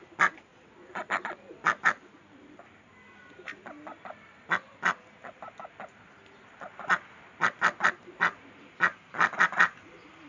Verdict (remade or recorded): recorded